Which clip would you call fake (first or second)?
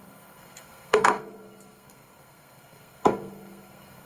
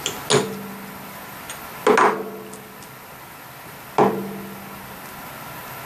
first